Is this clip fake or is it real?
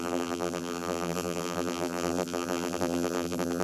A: fake